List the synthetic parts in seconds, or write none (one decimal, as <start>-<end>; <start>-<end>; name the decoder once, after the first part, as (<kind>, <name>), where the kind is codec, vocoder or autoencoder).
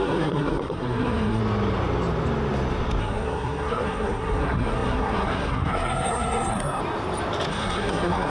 0.0-1.4 (codec, SNAC); 3.0-6.8; 7.5-8.3